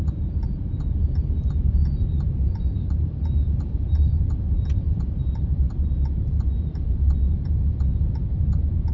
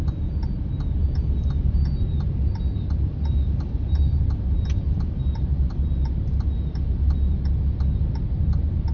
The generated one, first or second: first